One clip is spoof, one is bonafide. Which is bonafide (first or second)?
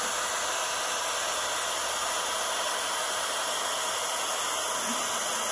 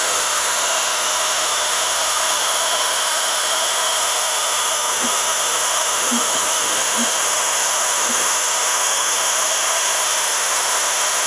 first